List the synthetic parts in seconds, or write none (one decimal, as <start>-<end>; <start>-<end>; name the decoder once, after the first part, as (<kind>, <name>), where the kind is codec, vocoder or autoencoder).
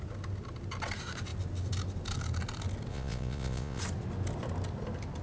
2.9-3.8 (vocoder, Vocos)